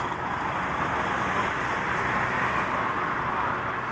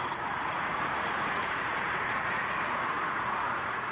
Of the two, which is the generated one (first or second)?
second